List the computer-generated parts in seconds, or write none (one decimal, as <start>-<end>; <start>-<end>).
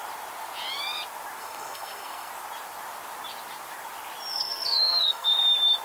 1.4-2.3; 4.3-5.3